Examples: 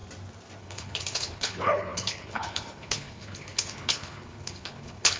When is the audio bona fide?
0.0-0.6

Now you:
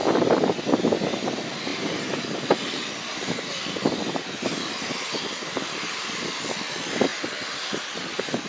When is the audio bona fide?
0.0-8.5

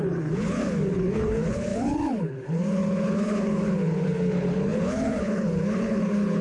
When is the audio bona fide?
none

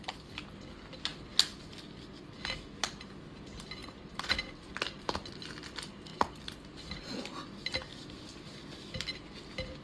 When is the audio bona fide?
0.0-9.8

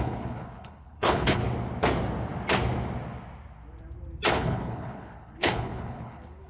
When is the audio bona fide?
1.4-4.3

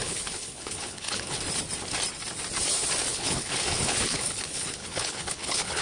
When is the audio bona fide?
1.4-3.1

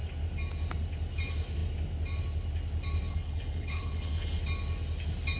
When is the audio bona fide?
0.0-3.1; 4.4-5.4

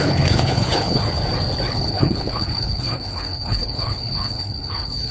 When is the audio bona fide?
1.0-1.7